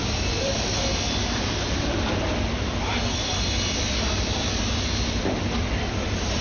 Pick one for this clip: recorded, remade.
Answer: remade